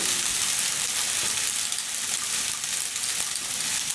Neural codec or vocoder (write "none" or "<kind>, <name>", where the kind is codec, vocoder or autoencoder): none